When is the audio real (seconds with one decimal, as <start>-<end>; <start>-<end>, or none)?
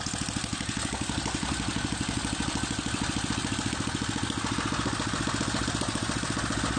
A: 0.0-6.8